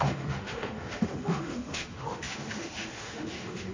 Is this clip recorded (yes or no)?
no